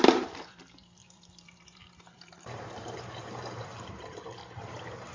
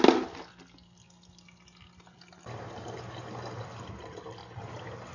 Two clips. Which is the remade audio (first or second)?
first